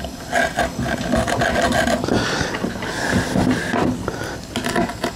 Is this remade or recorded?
recorded